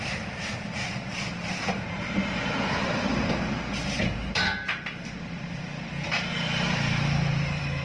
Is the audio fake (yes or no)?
yes